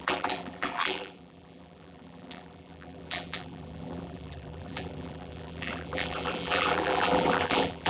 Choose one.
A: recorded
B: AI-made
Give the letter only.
B